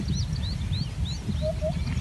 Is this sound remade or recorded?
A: recorded